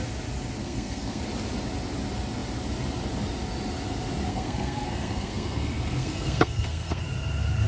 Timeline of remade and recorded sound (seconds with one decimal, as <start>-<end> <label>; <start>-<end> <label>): 0.0-0.6 recorded; 0.6-1.2 remade; 1.2-4.3 recorded; 4.3-7.0 remade; 7.0-7.7 recorded